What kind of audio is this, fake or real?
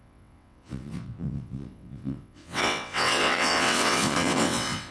fake